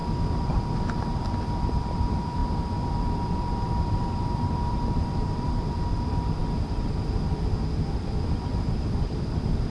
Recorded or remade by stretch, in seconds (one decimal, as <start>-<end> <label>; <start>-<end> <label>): 0.0-1.7 recorded; 1.7-9.7 remade